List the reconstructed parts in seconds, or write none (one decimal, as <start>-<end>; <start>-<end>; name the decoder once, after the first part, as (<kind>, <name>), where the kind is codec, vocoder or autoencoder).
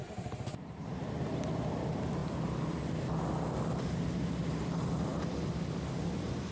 0.0-1.0 (vocoder, BigVGAN v2)